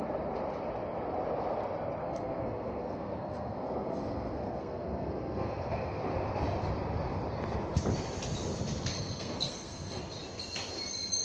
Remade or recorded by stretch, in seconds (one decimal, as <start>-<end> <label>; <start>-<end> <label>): 0.0-2.0 recorded; 2.0-6.0 remade; 6.0-8.9 recorded; 8.9-10.0 remade; 10.0-11.2 recorded